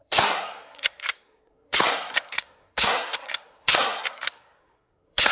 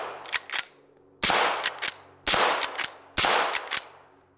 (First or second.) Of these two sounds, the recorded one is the second